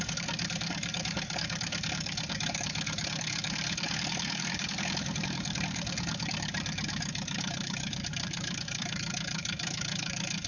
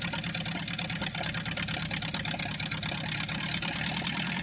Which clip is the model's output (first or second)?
first